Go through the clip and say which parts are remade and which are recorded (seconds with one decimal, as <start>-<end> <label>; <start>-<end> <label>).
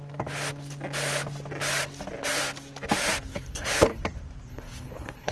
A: 0.0-3.3 recorded; 3.3-4.0 remade; 4.0-4.5 recorded; 4.5-5.3 remade